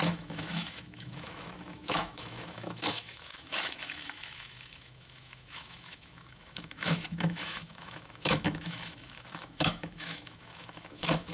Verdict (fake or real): fake